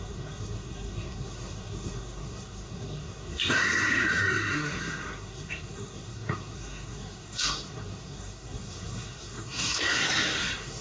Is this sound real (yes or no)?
no